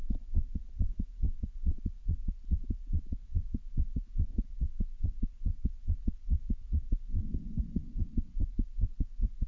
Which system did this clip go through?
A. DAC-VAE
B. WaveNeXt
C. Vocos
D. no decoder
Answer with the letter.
B